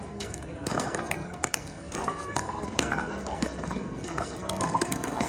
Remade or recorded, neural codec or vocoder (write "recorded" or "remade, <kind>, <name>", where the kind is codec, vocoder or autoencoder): remade, codec, SNAC